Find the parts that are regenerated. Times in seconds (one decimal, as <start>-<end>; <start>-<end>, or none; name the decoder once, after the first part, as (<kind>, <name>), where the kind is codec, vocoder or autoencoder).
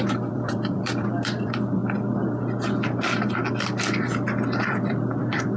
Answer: 0.0-1.8 (vocoder, BigVGAN v2); 4.6-5.6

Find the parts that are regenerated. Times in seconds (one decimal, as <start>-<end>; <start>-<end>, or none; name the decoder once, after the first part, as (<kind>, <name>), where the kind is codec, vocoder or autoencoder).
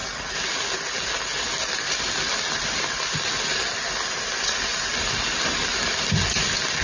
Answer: none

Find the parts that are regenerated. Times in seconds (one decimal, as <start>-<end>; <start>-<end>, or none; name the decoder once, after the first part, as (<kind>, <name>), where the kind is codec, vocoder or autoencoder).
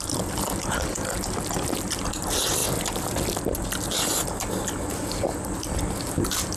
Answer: none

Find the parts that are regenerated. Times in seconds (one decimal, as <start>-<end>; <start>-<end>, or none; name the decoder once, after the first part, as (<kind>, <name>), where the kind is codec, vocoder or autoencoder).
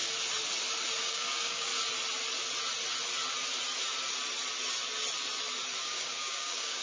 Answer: 1.0-1.7 (codec, DAC); 5.8-6.8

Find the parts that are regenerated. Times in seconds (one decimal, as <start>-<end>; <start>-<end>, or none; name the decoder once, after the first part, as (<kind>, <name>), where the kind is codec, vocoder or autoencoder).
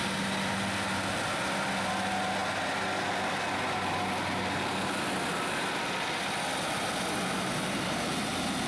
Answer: none